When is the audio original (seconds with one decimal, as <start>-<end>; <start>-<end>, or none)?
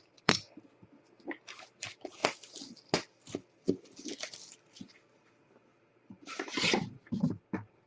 2.2-5.9